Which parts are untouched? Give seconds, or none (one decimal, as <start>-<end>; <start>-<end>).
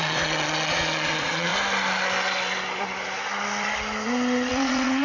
1.5-4.5